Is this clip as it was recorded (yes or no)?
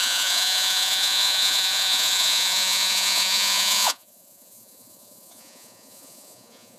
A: no